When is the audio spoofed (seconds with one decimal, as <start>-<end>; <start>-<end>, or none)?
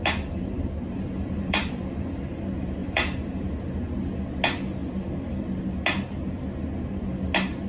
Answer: 0.0-2.3; 2.8-3.6